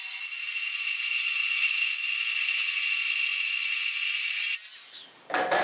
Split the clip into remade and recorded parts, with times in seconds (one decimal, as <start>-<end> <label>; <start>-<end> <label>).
0.0-1.4 recorded; 1.4-2.9 remade; 2.9-3.3 recorded; 3.3-4.2 remade; 4.2-5.6 recorded